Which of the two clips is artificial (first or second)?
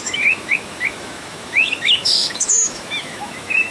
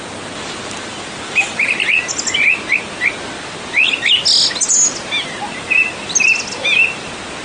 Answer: first